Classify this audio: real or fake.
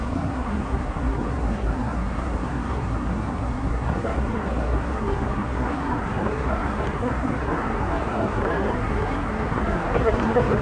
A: fake